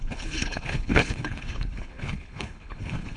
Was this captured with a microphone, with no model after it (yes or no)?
no